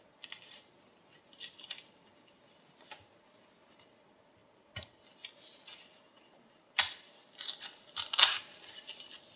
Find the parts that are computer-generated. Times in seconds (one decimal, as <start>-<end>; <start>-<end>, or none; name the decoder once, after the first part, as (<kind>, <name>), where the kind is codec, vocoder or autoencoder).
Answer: none